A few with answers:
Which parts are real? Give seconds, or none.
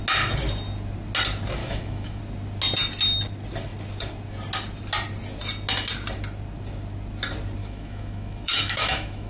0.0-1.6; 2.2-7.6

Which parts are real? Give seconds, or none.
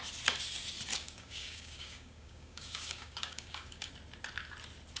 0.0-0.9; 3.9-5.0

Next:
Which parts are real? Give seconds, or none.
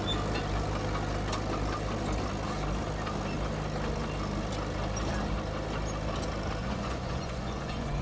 0.0-6.6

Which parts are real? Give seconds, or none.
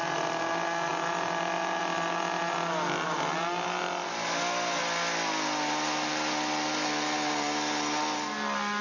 0.0-8.8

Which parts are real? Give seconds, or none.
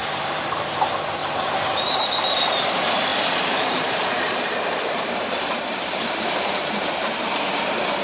0.6-1.2; 1.8-3.1; 6.9-8.0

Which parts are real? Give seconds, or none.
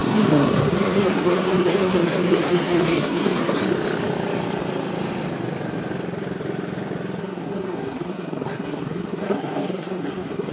3.6-7.2